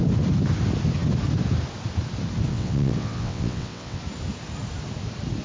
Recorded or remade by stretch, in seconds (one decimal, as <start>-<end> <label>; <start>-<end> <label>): 0.0-2.5 recorded; 2.5-4.0 remade; 4.0-5.4 recorded

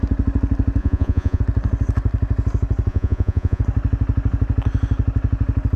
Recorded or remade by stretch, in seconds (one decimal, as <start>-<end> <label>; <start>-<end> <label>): 0.0-0.8 recorded; 0.8-1.4 remade; 1.4-2.9 recorded; 2.9-3.6 remade; 3.6-5.8 recorded

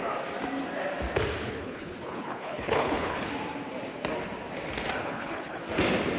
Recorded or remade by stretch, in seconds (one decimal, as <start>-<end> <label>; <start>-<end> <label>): 0.0-1.4 recorded; 1.4-3.3 remade; 3.3-5.0 recorded; 5.0-5.6 remade; 5.6-6.2 recorded

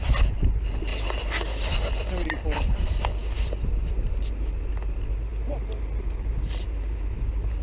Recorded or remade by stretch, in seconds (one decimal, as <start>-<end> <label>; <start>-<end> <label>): 0.0-0.9 recorded; 0.9-4.3 remade; 4.3-7.6 recorded

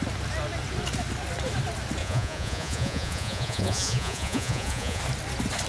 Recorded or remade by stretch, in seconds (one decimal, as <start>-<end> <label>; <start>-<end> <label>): 0.0-2.0 recorded; 2.0-5.0 remade; 5.0-5.7 recorded

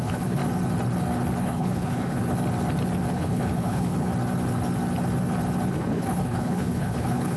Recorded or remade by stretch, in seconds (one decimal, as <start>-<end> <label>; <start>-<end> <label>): 0.0-0.4 remade; 0.4-1.4 recorded; 1.4-2.2 remade; 2.2-3.1 recorded; 3.1-4.1 remade; 4.1-5.7 recorded; 5.7-7.4 remade

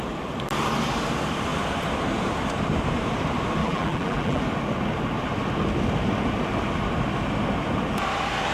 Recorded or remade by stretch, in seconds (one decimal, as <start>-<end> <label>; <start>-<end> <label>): 0.0-3.6 recorded; 3.6-4.4 remade; 4.4-8.5 recorded